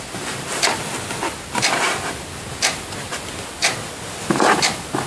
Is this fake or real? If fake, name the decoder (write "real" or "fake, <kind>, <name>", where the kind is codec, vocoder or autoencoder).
real